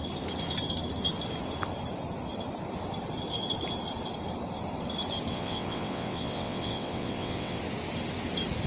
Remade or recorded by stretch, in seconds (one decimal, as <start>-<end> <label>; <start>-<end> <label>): 0.0-5.3 recorded; 5.3-7.6 remade; 7.6-8.7 recorded